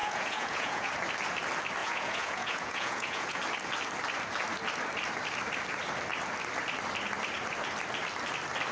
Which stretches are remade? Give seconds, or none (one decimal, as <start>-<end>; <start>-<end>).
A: 0.0-0.9; 1.8-3.4

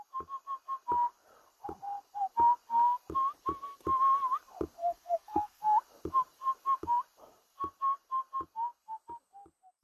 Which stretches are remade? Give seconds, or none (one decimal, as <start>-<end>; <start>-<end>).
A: 4.8-5.6